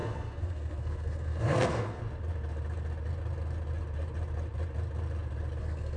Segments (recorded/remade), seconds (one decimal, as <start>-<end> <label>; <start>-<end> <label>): 0.0-2.0 remade; 2.0-5.6 recorded; 5.6-6.0 remade

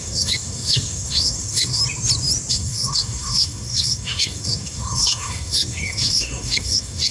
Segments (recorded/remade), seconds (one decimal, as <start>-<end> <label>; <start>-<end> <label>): 0.0-1.8 remade; 1.8-2.5 recorded; 2.5-7.1 remade